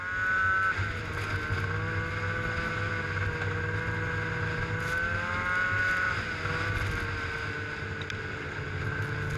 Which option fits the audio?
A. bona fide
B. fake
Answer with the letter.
A